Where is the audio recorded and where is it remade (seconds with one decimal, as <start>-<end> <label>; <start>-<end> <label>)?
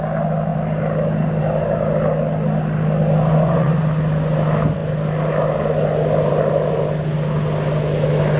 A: 0.0-3.3 recorded; 3.3-3.8 remade; 3.8-8.4 recorded